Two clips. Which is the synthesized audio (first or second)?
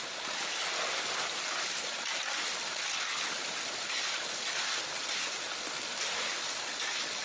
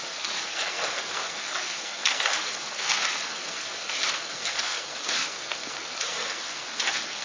second